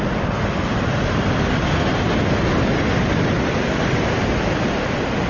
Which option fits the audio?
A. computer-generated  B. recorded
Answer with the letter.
B